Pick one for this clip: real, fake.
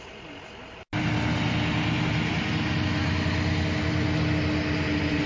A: real